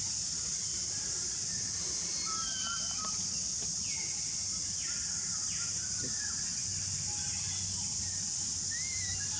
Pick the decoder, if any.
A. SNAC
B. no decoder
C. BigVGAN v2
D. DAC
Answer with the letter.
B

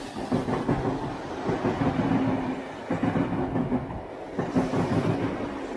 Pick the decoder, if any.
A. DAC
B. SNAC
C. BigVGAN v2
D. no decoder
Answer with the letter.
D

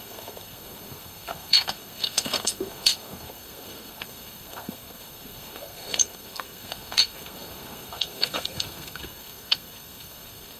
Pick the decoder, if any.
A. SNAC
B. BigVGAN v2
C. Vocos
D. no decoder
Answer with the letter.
A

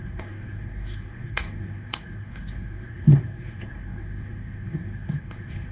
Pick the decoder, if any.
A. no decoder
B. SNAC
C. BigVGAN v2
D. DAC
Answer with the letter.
B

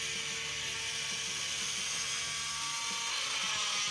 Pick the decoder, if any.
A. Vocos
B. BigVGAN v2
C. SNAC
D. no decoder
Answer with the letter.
D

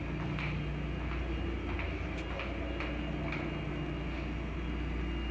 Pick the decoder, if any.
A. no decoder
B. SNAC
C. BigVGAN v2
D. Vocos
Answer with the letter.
A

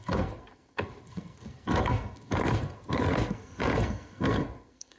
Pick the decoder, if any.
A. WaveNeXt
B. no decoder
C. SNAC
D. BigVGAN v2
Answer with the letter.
C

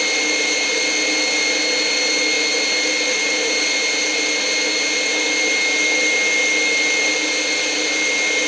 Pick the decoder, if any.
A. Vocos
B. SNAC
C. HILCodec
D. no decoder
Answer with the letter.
D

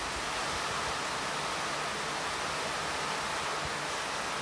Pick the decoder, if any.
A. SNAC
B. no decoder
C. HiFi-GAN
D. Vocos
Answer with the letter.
B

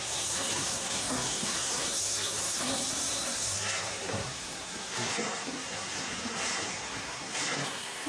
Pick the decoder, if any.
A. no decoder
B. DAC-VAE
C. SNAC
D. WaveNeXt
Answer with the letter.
C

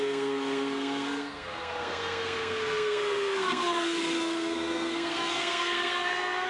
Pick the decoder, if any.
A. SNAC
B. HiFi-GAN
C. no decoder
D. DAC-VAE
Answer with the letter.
A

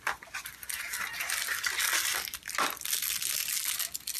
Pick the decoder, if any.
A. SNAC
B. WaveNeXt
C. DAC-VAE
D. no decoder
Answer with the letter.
D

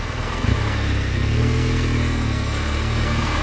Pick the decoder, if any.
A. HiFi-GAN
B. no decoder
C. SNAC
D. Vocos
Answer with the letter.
C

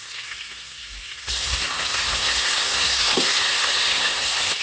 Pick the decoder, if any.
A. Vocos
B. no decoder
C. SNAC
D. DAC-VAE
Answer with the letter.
C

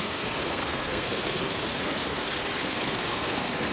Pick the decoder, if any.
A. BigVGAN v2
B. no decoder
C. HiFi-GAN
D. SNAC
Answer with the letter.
D